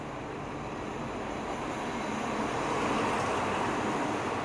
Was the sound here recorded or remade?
recorded